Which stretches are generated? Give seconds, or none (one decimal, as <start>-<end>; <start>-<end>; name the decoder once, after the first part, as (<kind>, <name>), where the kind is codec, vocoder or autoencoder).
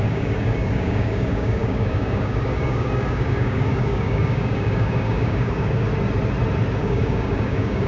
0.0-5.9 (codec, DAC); 6.8-7.9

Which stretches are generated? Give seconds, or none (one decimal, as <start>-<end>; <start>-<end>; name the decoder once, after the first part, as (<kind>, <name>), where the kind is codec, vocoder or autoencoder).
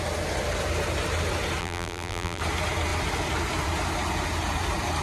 1.6-2.4 (vocoder, BigVGAN v2)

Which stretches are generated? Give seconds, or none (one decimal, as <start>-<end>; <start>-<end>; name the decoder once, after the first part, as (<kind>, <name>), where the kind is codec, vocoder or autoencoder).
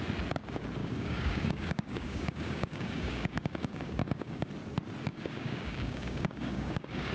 0.8-4.5 (codec, DAC); 5.1-7.1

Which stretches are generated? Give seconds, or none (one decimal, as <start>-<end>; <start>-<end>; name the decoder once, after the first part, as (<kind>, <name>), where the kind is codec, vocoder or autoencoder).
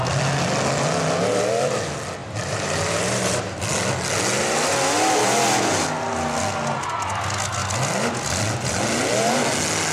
2.2-3.6 (vocoder, BigVGAN v2)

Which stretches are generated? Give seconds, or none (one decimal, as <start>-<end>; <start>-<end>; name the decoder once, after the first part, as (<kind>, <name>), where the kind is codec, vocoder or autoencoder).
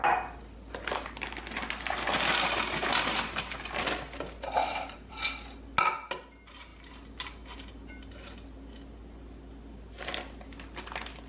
4.6-5.1 (vocoder, BigVGAN v2)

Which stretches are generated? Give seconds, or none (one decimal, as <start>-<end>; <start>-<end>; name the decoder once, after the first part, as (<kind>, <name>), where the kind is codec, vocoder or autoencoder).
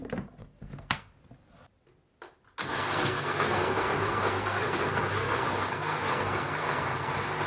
0.4-1.1 (codec, SNAC); 2.6-7.1